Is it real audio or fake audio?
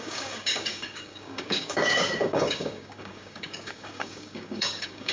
fake